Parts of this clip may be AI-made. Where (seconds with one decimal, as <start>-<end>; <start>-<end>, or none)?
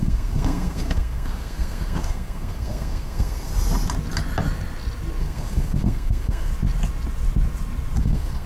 0.0-3.5; 5.2-6.5; 8.0-8.5